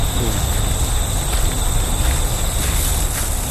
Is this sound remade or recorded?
recorded